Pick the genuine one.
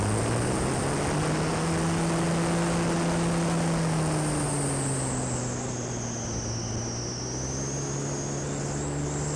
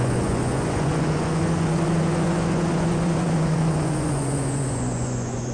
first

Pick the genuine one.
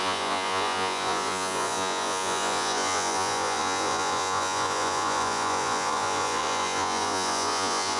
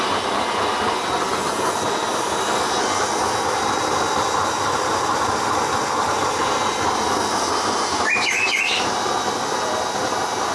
second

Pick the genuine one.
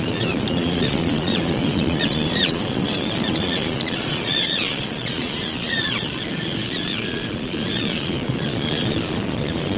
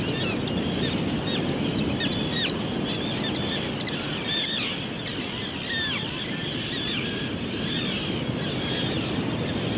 second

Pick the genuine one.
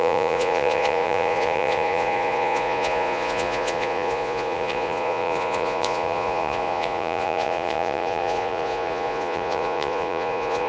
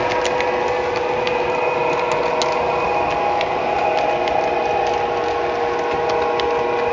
second